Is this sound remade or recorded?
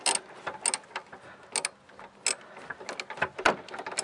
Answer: recorded